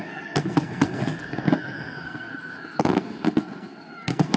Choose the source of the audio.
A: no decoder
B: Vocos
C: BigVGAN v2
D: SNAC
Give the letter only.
D